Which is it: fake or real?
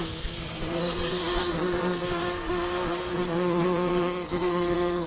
fake